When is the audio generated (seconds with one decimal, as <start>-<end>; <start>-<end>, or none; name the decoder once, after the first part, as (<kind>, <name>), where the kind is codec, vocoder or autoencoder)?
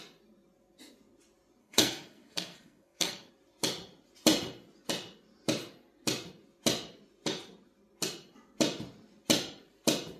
1.6-3.3 (codec, SNAC)